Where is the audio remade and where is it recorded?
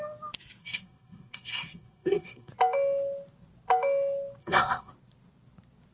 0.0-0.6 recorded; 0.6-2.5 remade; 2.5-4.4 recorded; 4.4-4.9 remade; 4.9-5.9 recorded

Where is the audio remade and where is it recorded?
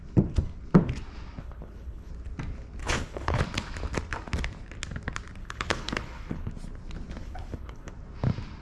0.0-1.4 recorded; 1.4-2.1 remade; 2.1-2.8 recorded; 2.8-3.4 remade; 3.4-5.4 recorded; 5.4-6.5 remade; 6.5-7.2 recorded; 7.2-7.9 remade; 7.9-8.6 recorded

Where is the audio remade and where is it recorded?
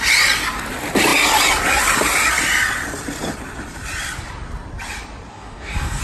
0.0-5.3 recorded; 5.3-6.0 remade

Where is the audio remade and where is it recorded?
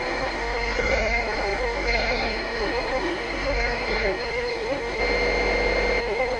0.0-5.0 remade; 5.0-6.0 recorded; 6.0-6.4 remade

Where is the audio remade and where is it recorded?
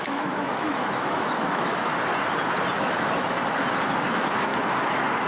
0.0-1.9 remade; 1.9-2.8 recorded; 2.8-3.4 remade; 3.4-4.1 recorded; 4.1-4.5 remade; 4.5-5.3 recorded